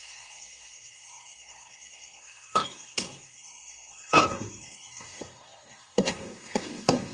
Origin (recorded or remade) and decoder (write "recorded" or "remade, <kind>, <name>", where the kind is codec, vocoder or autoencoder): remade, codec, SNAC